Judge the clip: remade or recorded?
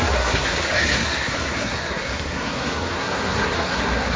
remade